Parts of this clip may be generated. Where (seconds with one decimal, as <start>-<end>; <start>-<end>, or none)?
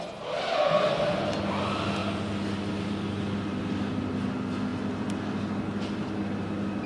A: none